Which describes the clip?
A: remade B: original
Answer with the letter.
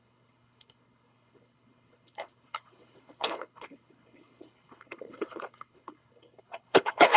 A